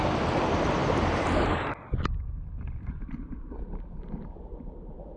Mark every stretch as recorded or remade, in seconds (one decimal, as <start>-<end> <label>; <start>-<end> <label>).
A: 0.0-5.2 recorded